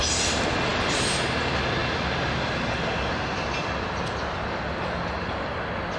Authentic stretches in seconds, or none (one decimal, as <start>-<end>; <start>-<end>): 0.0-6.0